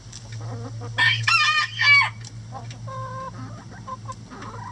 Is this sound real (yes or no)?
yes